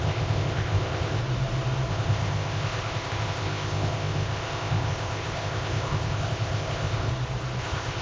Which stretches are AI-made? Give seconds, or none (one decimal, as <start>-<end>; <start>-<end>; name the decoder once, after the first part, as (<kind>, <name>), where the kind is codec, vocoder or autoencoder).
0.0-1.2 (codec, ZipCodec); 1.9-7.1; 7.6-8.0